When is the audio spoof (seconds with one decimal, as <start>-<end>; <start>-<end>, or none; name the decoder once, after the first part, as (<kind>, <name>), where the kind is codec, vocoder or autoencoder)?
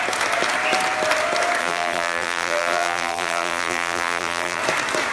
1.6-4.6 (vocoder, BigVGAN v2)